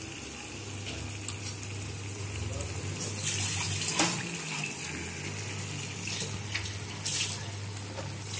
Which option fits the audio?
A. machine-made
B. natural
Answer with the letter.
B